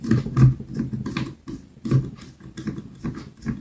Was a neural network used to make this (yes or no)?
no